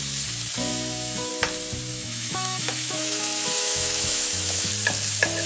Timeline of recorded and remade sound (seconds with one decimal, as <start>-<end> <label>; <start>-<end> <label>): 0.0-0.7 recorded; 0.7-1.3 remade; 1.3-1.9 recorded; 1.9-4.7 remade; 4.7-5.5 recorded